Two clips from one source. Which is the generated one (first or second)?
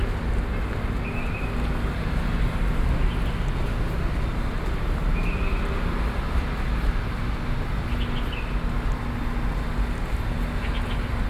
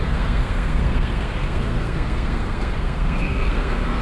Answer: second